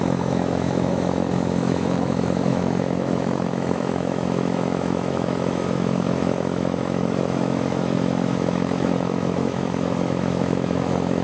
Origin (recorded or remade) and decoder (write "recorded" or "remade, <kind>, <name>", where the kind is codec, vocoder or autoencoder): remade, autoencoder, DAC-VAE